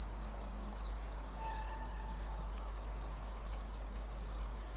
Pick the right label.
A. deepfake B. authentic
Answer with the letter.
A